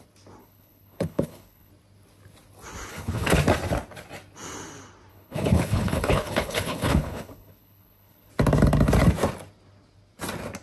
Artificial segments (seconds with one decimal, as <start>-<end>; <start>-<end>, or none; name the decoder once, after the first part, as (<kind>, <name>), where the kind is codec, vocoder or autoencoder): 0.4-1.7 (codec, HILCodec); 2.9-3.4; 5.1-8.3